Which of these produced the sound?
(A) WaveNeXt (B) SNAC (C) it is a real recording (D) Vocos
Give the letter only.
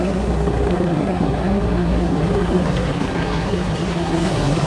B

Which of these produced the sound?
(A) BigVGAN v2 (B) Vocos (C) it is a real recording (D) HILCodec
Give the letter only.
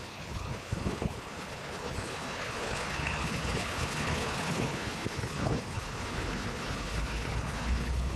D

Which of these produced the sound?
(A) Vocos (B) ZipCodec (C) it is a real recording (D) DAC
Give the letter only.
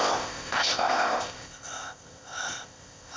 B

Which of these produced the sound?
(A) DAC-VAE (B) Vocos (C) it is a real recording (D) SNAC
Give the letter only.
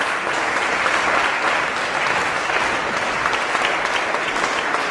C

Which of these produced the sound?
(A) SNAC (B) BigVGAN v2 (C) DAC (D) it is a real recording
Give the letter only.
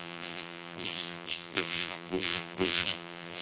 B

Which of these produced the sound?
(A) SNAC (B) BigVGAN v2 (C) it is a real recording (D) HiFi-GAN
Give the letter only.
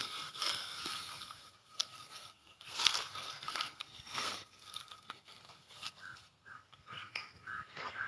A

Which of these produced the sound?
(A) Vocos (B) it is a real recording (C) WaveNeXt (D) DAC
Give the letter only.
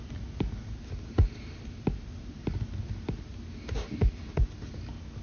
B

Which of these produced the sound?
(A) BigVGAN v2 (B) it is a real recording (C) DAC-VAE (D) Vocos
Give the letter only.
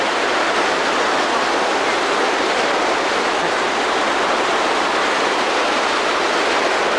B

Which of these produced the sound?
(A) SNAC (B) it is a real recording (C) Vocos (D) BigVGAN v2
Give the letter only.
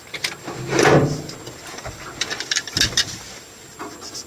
D